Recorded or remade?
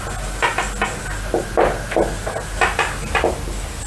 recorded